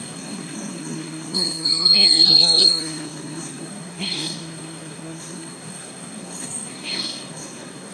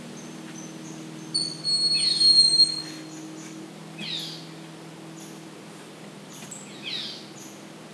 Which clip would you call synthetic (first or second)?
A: first